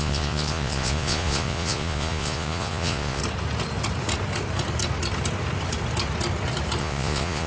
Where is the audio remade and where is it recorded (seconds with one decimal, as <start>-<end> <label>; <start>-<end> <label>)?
0.0-3.2 remade; 3.2-6.8 recorded; 6.8-7.5 remade